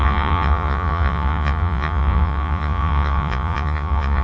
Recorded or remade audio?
remade